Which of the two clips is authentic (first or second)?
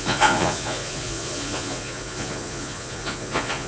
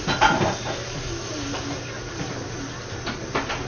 second